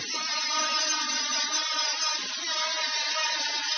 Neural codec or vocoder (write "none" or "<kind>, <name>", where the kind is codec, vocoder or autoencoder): none